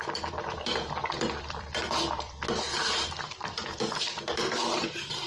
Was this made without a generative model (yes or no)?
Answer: no